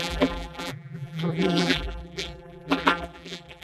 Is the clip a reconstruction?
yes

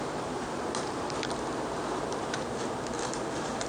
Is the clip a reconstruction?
no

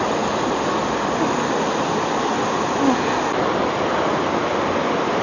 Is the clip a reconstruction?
no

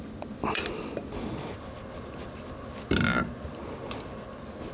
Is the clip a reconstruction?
no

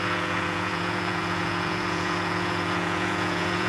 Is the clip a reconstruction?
yes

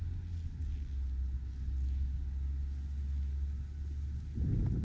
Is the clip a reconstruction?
no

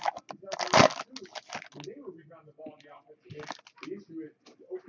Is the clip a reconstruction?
no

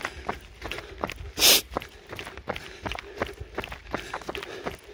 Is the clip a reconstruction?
no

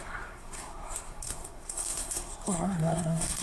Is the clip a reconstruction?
yes